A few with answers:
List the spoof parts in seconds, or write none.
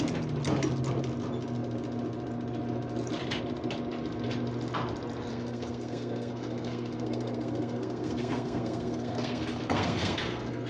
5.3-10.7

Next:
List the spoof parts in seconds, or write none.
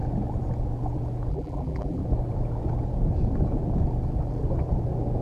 1.3-2.0